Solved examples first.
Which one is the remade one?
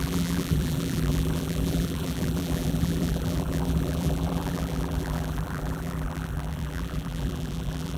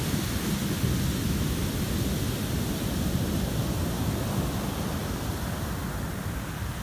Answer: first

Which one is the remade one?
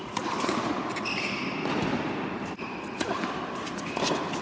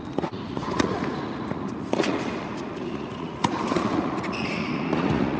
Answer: second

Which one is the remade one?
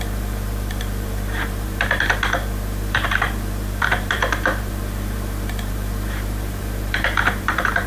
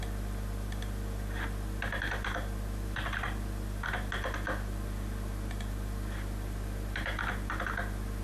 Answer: first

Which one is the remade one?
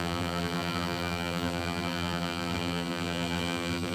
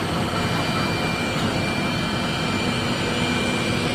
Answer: first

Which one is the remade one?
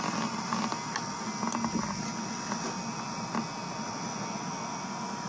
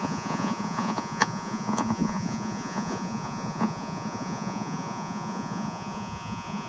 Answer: second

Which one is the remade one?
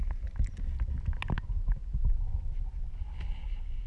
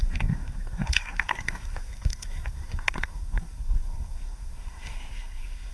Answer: second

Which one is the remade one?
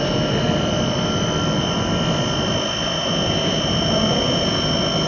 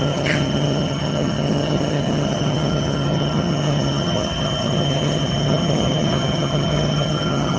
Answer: second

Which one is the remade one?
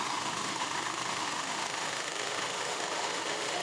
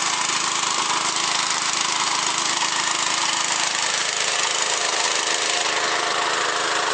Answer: first